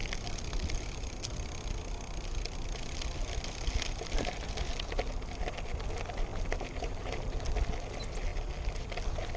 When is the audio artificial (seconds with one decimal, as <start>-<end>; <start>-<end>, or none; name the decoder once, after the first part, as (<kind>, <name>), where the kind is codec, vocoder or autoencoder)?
none